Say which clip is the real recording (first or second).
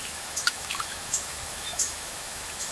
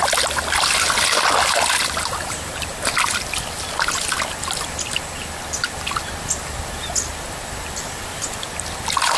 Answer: second